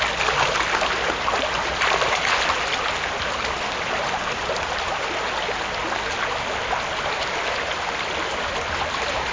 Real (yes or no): yes